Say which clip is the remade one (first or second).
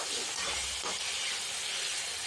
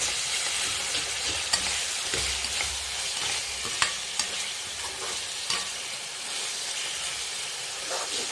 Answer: second